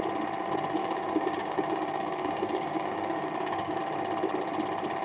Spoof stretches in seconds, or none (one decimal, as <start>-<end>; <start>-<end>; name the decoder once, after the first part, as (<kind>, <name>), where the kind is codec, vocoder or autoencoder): 0.8-3.8 (codec, DAC)